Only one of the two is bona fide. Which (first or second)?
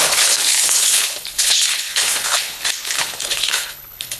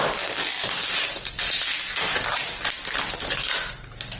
second